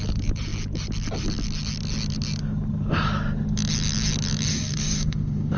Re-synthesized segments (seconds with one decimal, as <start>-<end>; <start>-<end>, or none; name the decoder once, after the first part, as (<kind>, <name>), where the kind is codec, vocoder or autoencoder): 4.5-5.6 (codec, DAC)